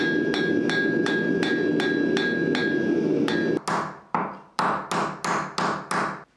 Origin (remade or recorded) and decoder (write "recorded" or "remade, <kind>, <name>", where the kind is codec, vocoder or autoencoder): recorded